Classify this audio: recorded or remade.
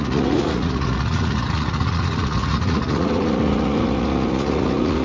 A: remade